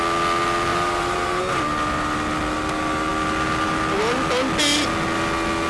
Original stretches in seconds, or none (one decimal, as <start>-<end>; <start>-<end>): 0.0-0.7; 1.6-5.7